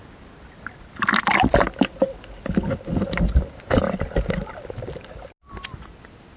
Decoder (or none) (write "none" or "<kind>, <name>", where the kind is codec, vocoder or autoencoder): none